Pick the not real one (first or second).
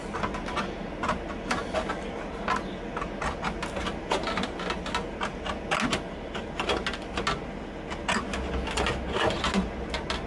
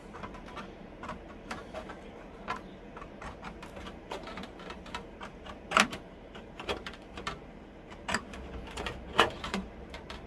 second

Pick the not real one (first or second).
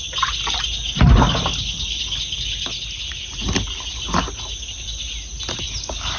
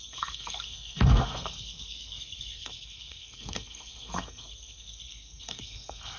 second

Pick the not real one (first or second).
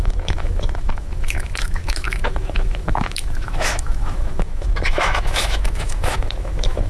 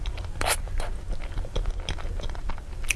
first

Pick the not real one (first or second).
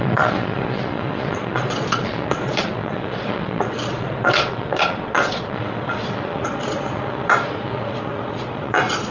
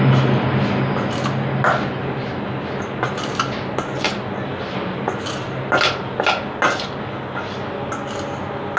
first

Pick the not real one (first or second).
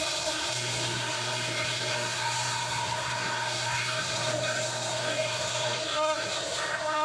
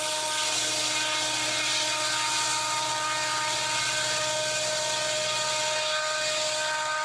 first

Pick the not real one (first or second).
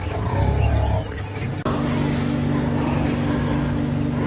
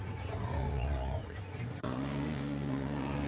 second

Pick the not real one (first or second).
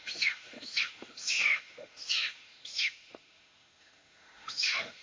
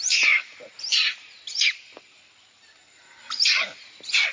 first